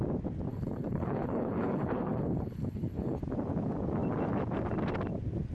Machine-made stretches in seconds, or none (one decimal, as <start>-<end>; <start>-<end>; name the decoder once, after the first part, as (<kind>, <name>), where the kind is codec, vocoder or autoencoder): 0.5-3.2 (codec, HILCodec)